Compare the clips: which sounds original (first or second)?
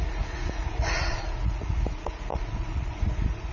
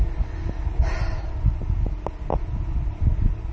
second